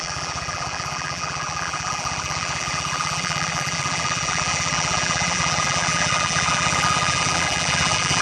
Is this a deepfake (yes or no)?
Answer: yes